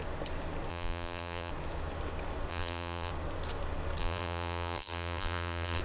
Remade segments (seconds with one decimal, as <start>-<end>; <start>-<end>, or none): 0.7-1.5; 2.5-3.1; 4.0-5.8